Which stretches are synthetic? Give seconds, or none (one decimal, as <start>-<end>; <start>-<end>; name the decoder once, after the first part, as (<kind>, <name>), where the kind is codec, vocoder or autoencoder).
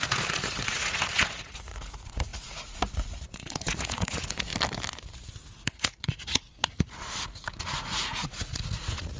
0.0-4.5 (vocoder, Vocos); 5.5-6.5; 7.2-9.2